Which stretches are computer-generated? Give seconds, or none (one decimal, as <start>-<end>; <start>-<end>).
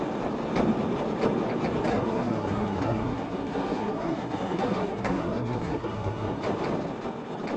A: 1.9-6.4